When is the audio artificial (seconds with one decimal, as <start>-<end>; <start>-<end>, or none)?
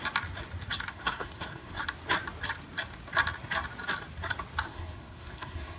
0.9-1.8; 4.7-5.8